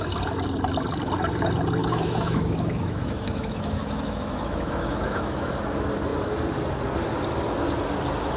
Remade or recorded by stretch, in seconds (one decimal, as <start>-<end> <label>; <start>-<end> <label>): 0.0-1.8 recorded; 1.8-5.6 remade; 5.6-8.4 recorded